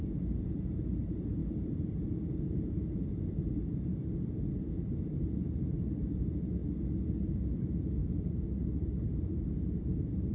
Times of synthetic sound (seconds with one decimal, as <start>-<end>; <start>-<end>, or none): 0.0-1.4; 2.4-3.9; 4.7-6.6; 7.1-10.3